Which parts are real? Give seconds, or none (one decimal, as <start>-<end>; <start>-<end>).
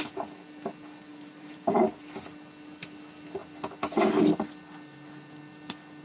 0.0-1.1; 2.0-6.0